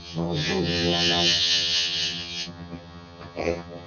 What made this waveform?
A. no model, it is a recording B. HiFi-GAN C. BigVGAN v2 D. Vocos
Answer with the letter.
B